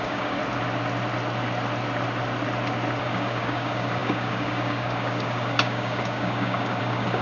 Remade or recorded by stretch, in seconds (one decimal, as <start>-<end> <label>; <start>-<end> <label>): 0.0-0.4 remade; 0.4-3.0 recorded; 3.0-7.2 remade